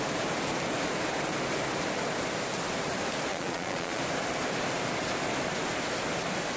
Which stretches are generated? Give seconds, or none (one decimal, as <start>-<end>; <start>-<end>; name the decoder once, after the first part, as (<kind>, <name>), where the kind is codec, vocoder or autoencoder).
3.3-4.0 (vocoder, Vocos)